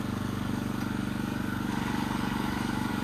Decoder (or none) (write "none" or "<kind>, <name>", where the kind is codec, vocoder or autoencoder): codec, DAC